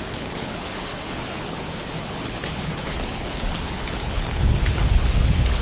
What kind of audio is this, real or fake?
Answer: fake